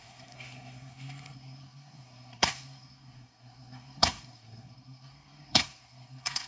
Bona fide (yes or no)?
no